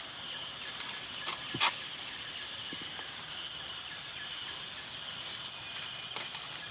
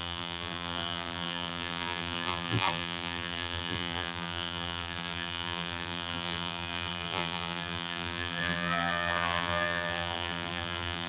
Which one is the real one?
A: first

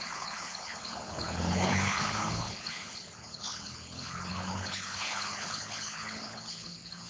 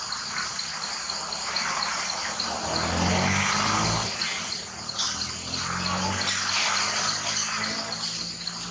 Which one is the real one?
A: second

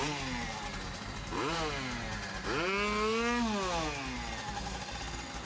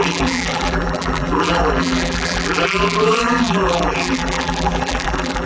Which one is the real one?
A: first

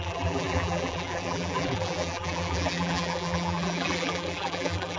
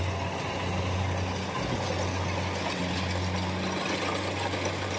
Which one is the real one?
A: second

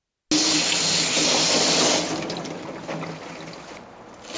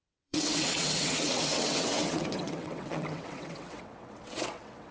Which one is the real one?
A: first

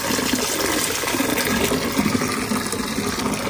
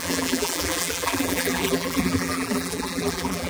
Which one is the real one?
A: first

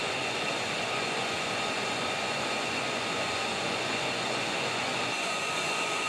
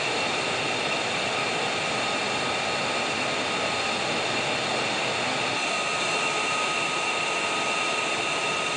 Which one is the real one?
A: second